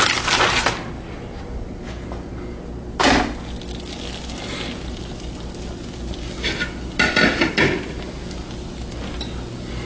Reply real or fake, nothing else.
real